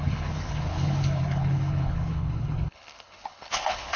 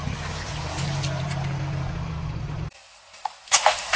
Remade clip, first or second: first